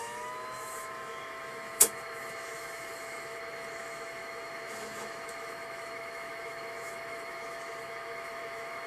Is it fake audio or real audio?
fake